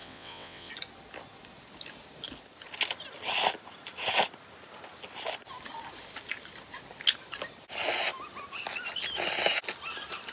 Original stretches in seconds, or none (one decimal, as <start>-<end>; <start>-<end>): 0.7-10.3